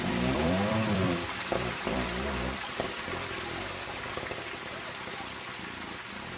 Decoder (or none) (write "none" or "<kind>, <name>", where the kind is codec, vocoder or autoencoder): vocoder, BigVGAN v2